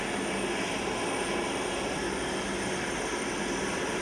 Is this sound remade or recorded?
recorded